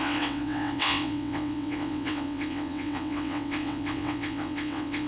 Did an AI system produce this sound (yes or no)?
yes